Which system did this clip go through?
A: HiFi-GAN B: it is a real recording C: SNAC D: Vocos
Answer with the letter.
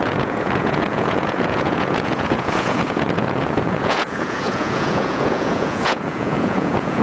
D